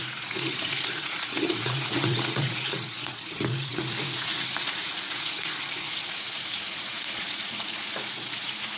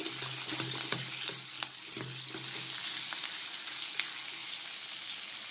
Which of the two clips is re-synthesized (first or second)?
first